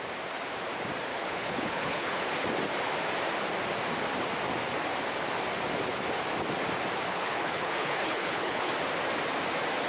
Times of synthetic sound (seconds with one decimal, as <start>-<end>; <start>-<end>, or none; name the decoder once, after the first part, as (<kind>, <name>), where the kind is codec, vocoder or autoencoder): 1.1-2.3 (codec, HILCodec); 7.1-8.7